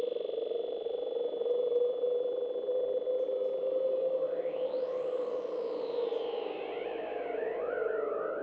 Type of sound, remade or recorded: recorded